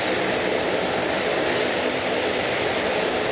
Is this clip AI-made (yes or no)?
no